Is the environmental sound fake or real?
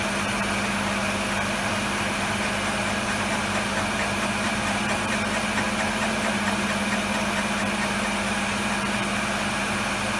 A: real